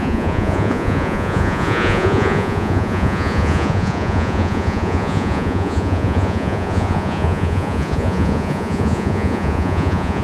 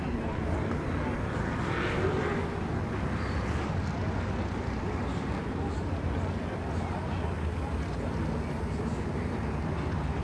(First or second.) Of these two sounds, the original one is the second